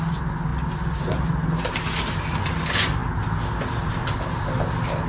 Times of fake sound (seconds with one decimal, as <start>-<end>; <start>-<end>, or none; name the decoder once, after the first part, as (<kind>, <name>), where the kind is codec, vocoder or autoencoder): none